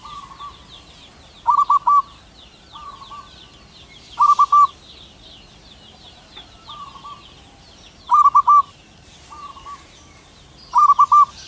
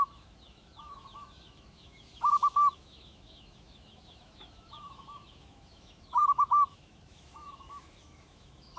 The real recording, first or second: first